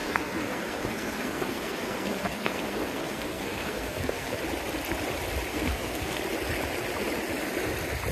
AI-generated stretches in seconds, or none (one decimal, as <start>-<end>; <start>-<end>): 0.0-4.4; 5.5-6.2